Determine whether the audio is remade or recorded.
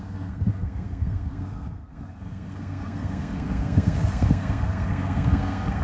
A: remade